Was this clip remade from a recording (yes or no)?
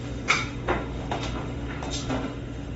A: yes